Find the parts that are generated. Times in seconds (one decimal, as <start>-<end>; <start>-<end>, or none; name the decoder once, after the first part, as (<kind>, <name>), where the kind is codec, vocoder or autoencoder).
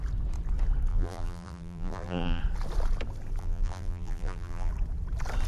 0.9-2.4 (vocoder, BigVGAN v2); 3.4-4.7